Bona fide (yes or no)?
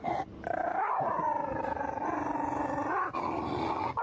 yes